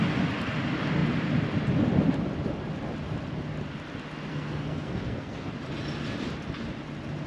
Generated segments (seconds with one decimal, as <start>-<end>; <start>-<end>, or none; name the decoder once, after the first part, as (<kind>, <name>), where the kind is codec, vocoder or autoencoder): 4.3-5.5 (codec, SNAC)